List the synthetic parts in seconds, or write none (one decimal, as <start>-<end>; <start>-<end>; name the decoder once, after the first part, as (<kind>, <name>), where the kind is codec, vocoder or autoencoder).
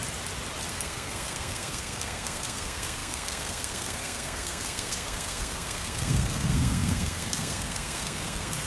0.7-8.7 (codec, SNAC)